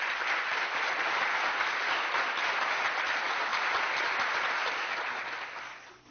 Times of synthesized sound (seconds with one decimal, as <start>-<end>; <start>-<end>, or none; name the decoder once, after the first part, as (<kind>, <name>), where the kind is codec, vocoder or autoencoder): 0.5-1.2 (vocoder, BigVGAN v2)